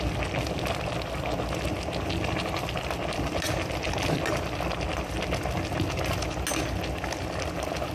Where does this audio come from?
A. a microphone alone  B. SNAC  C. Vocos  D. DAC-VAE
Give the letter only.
A